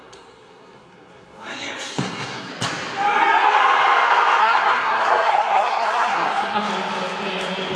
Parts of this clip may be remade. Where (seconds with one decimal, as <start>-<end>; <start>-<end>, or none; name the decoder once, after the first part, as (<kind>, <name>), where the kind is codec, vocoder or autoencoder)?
0.0-2.5 (codec, SNAC); 4.4-6.7